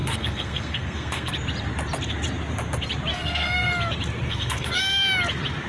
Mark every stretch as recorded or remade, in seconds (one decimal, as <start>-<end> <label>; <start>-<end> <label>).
0.0-1.3 remade; 1.3-3.1 recorded; 3.1-3.7 remade; 3.7-4.3 recorded; 4.3-4.8 remade; 4.8-5.7 recorded